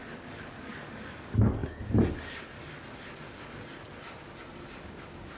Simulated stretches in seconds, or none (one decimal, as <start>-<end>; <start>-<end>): 0.0-1.6; 4.8-5.4